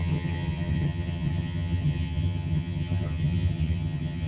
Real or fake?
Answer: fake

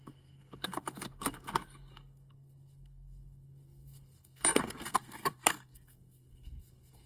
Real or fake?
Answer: fake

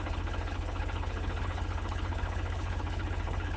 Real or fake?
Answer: fake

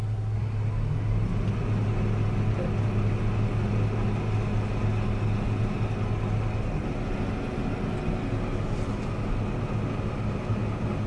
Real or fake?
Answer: real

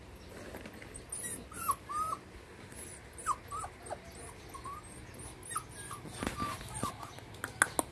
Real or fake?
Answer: real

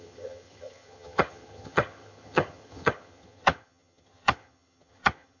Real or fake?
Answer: fake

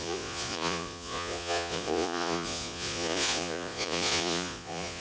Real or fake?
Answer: fake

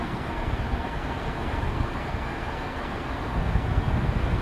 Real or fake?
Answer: fake